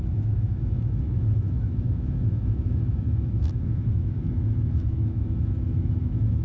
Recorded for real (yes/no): no